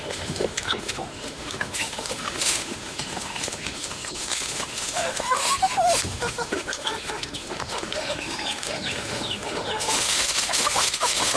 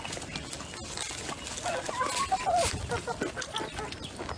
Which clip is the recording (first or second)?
second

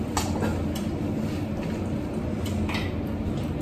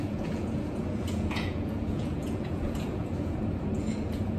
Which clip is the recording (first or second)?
first